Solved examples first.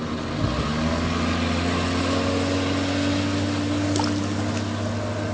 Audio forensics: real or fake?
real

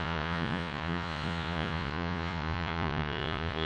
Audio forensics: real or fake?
fake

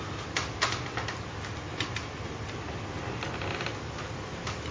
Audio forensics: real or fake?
real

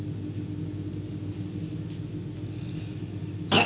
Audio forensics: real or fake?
real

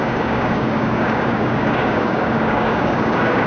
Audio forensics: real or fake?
fake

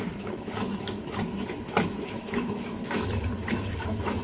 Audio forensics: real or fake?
fake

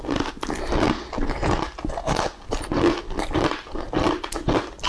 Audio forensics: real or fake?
real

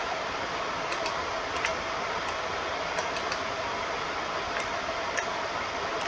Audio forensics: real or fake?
real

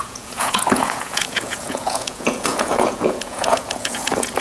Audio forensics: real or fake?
fake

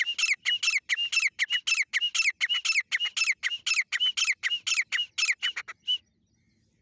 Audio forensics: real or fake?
real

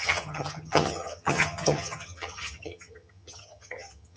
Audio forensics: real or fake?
fake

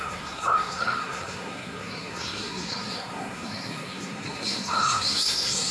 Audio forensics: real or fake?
fake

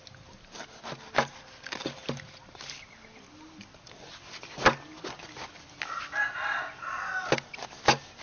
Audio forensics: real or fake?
real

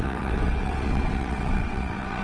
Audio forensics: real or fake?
fake